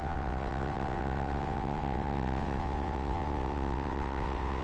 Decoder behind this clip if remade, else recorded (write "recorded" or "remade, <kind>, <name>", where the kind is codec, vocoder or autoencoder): remade, vocoder, WaveNeXt